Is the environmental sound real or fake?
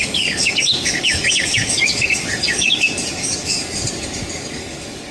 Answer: fake